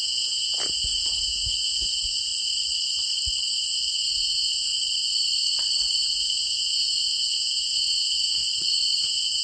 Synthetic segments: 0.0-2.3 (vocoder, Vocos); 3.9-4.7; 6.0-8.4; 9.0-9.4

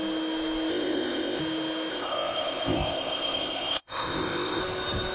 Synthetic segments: 0.7-1.4 (codec, ZipCodec); 1.9-4.6

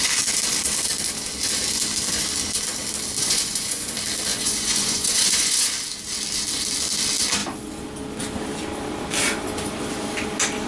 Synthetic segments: 3.2-3.9 (vocoder, Vocos); 4.3-5.7